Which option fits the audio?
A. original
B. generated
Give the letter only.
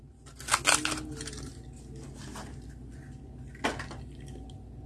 A